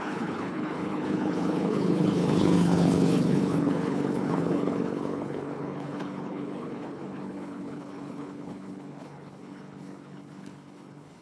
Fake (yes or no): yes